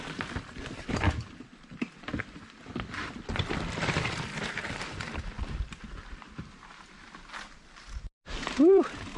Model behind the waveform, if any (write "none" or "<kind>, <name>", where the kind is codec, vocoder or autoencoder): vocoder, BigVGAN v2